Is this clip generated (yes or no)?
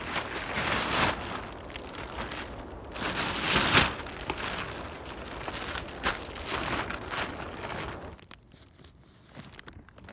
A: no